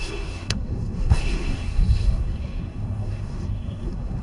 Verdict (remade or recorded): remade